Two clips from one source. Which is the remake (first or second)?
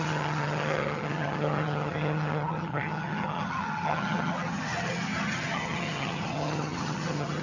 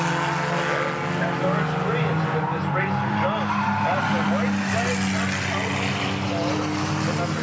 first